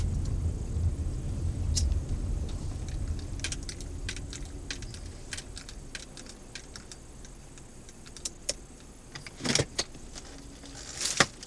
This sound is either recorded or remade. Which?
recorded